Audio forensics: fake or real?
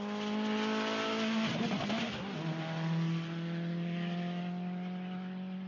real